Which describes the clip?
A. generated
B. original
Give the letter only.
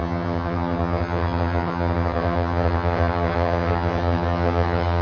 A